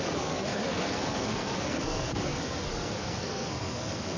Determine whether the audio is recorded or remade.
remade